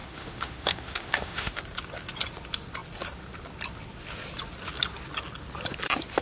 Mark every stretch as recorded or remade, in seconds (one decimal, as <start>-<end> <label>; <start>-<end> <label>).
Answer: 0.0-1.6 remade; 1.6-6.2 recorded